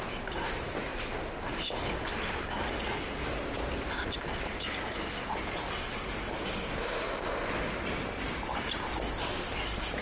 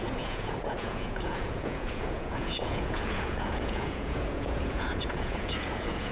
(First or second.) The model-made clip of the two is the second